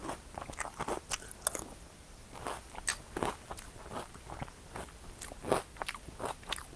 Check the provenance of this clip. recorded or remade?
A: recorded